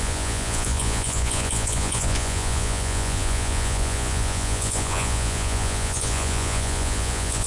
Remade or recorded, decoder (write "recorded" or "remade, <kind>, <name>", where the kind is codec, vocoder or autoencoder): remade, vocoder, Vocos